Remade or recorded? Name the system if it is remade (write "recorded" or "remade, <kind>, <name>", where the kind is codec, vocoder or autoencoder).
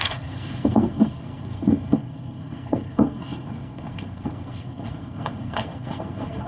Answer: remade, codec, SNAC